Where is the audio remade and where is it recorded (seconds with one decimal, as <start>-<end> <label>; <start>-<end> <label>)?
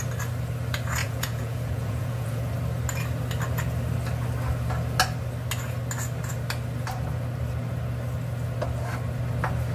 0.0-1.0 recorded; 1.0-2.5 remade; 2.5-9.7 recorded